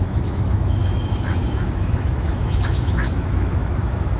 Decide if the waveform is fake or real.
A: fake